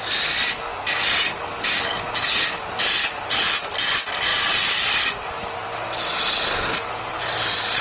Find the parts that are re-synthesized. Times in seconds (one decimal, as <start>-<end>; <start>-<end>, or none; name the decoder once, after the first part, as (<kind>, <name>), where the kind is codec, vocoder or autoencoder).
none